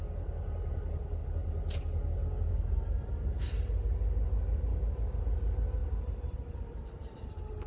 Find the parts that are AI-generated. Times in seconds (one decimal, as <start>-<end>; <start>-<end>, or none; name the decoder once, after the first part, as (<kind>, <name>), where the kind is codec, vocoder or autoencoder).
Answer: 4.7-5.2 (codec, DAC)